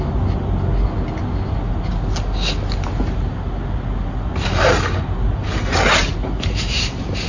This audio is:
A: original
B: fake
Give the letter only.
A